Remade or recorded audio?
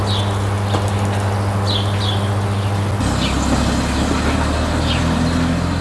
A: recorded